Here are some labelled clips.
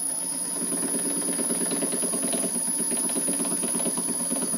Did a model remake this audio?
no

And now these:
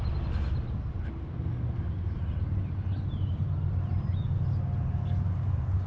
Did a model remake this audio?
no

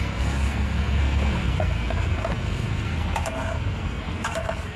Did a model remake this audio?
yes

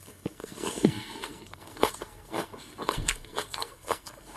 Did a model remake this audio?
yes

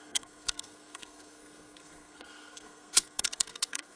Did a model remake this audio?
yes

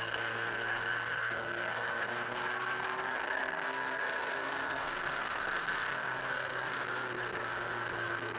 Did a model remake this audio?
yes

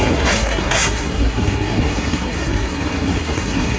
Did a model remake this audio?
yes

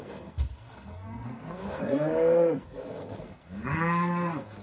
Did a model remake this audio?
yes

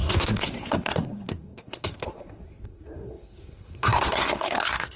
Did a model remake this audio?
yes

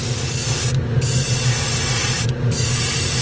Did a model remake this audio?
no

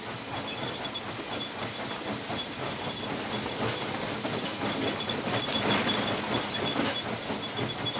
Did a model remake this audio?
no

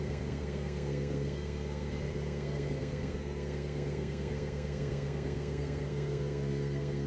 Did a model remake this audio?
yes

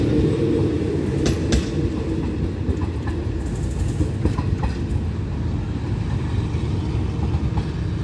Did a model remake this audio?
no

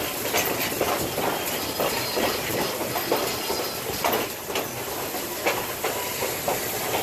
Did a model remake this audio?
no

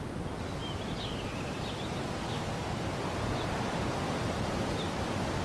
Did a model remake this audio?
no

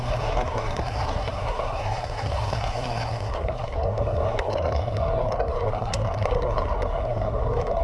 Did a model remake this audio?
yes